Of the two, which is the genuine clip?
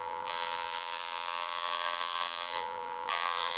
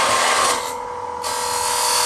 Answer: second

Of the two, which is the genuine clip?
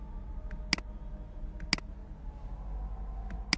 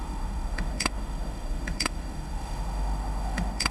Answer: first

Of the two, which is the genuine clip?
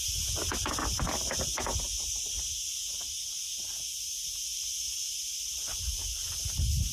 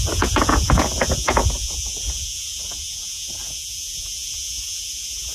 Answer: first